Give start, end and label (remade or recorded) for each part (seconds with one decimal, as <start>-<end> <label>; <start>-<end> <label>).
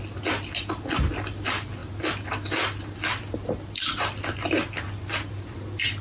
0.0-6.0 recorded